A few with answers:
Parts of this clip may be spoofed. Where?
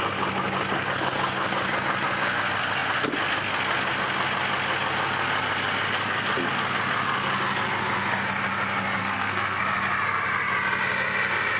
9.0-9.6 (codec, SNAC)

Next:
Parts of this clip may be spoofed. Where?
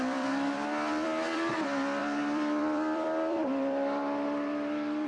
0.0-5.1 (vocoder, BigVGAN v2)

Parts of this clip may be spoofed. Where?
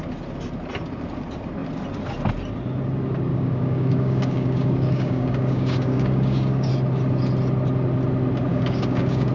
3.3-6.7 (codec, DAC); 8.5-9.3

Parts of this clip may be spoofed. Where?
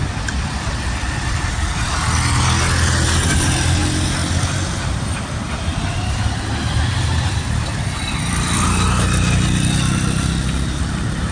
none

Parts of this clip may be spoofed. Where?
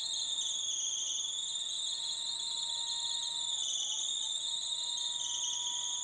3.6-4.5 (vocoder, Vocos)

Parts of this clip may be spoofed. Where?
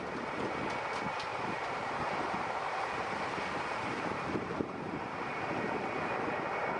1.3-5.2 (vocoder, BigVGAN v2)